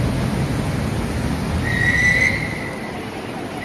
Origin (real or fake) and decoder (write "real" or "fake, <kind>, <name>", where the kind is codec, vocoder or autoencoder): real